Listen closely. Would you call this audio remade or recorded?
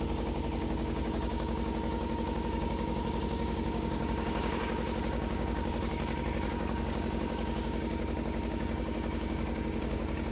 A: remade